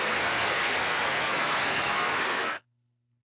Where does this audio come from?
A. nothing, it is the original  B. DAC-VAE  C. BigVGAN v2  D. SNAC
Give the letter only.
D